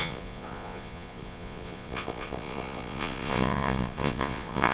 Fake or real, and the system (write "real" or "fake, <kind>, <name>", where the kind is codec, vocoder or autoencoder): fake, vocoder, Vocos